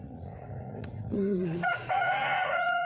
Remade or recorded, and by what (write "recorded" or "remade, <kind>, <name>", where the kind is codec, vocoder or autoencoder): remade, vocoder, Vocos